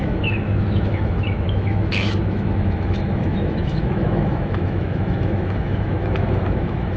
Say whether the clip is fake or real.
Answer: fake